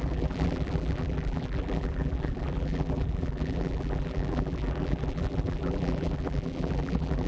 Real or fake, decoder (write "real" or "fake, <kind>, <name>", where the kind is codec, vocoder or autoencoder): fake, vocoder, BigVGAN v2